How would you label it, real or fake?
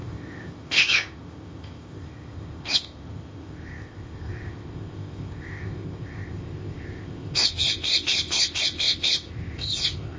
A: fake